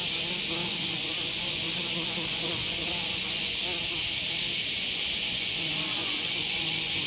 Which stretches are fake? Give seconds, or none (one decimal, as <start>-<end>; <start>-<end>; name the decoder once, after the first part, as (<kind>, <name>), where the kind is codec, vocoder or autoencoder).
0.6-3.6 (vocoder, Vocos); 4.8-7.1